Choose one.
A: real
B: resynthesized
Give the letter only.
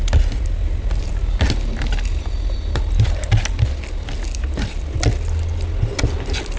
A